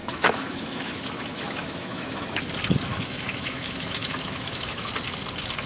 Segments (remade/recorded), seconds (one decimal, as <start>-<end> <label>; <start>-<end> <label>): 0.0-2.4 remade; 2.4-2.9 recorded; 2.9-4.9 remade; 4.9-5.7 recorded